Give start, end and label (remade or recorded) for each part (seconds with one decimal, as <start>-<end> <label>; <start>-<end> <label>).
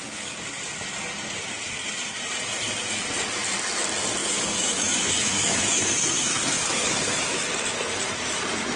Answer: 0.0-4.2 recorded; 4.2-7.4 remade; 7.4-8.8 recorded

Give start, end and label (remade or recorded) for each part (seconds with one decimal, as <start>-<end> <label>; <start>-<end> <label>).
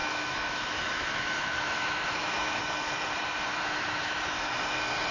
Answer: 0.0-2.6 remade; 2.6-3.5 recorded; 3.5-4.5 remade; 4.5-5.1 recorded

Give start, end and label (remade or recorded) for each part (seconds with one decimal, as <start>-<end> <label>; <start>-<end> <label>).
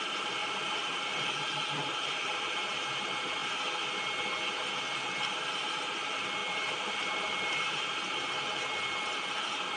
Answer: 0.0-0.4 recorded; 0.4-1.2 remade; 1.2-6.4 recorded; 6.4-7.8 remade; 7.8-9.8 recorded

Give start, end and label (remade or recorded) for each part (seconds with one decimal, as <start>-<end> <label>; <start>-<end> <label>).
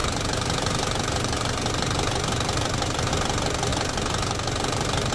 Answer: 0.0-3.1 remade; 3.1-3.7 recorded; 3.7-5.1 remade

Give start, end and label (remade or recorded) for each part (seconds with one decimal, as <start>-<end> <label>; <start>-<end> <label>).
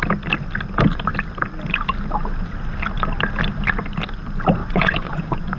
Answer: 0.0-4.6 recorded; 4.6-5.6 remade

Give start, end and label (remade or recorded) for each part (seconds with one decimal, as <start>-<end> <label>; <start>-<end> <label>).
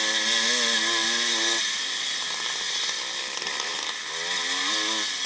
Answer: 0.0-5.3 recorded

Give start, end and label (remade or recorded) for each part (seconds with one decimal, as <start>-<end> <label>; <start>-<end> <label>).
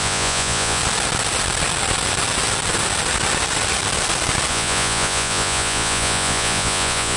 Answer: 0.0-0.8 remade; 0.8-4.5 recorded; 4.5-7.2 remade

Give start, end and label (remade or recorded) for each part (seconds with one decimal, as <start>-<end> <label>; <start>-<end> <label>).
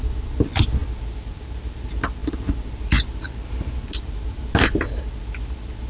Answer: 0.0-5.9 recorded